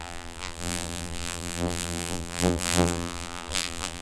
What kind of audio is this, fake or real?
fake